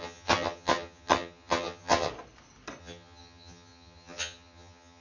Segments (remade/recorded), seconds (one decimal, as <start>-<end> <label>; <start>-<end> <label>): 0.0-2.1 remade; 2.1-2.8 recorded; 2.8-5.0 remade